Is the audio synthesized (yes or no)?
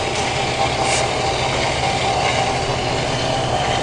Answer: no